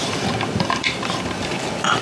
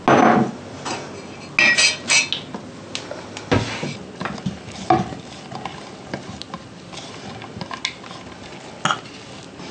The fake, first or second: first